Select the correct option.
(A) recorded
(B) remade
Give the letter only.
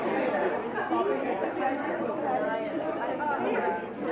A